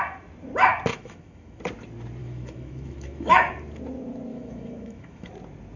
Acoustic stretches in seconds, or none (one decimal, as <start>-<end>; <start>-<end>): 0.0-0.9; 1.6-2.2; 3.5-4.3; 5.3-5.8